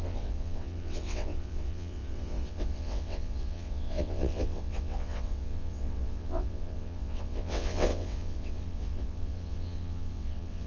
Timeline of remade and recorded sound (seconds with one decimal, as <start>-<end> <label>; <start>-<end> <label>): 0.0-10.7 remade